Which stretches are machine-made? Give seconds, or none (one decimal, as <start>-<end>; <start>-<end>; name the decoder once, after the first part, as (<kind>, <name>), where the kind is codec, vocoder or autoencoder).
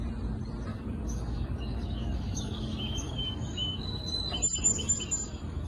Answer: 0.7-4.1 (codec, DAC); 4.7-5.7